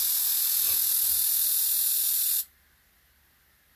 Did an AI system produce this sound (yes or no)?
no